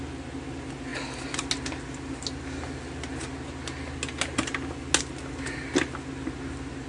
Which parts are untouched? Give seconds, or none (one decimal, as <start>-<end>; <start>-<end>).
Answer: 0.0-6.9